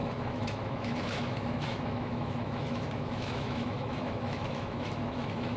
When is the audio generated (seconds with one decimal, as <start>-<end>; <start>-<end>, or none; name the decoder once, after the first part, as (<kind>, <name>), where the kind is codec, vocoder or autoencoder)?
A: 0.0-5.6 (autoencoder, DAC-VAE)